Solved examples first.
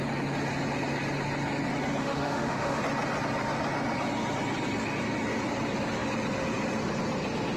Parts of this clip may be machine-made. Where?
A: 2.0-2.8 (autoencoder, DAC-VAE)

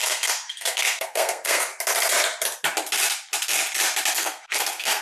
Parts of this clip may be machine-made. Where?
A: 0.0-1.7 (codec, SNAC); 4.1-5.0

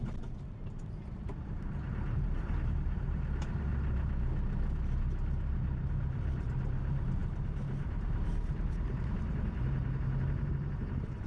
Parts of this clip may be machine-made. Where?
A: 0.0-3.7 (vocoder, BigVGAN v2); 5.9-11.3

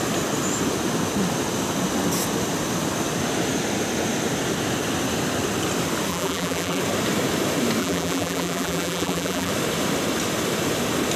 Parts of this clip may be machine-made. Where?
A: 6.1-6.8 (vocoder, BigVGAN v2); 7.8-9.5

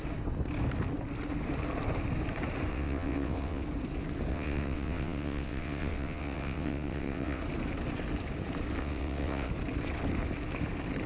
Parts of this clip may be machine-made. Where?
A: 2.7-3.6 (vocoder, WaveNeXt); 4.3-7.4; 8.8-9.5

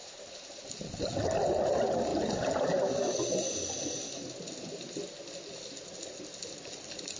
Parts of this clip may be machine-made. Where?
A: 0.0-0.6 (vocoder, BigVGAN v2)

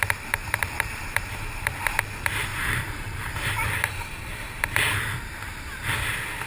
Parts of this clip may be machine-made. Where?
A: 0.4-1.7 (vocoder, BigVGAN v2); 2.5-4.6

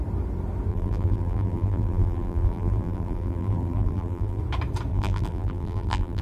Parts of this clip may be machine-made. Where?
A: 0.7-4.4 (vocoder, BigVGAN v2); 4.9-6.2